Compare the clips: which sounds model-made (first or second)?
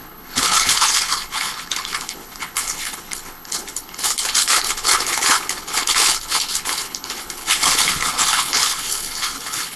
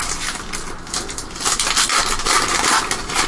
first